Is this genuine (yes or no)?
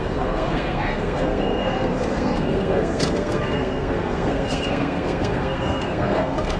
no